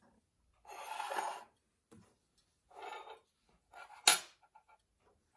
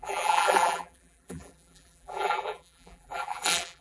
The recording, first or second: first